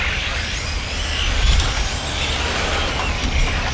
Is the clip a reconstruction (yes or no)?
no